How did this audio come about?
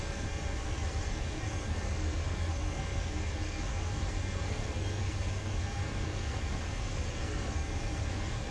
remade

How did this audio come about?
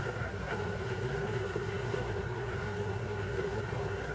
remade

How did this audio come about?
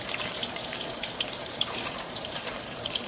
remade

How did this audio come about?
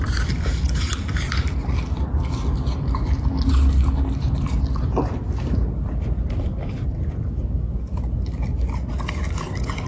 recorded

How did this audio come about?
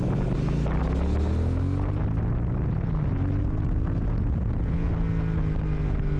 recorded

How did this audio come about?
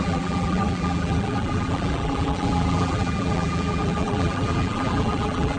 remade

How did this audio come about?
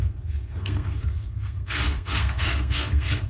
remade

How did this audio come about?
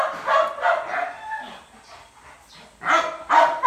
recorded